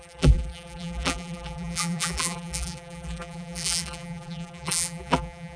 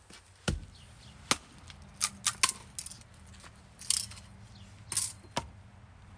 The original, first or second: second